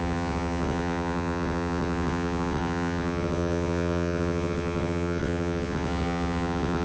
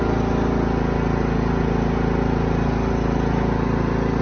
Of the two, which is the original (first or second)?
second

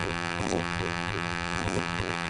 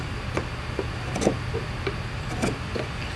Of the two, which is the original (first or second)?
second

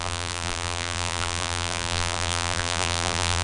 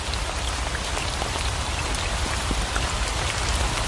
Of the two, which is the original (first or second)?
second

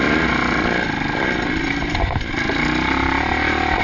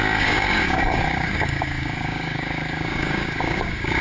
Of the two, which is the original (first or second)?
first